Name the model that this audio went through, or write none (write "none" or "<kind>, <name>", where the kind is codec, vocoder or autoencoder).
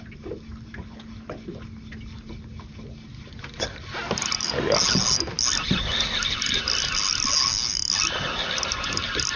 none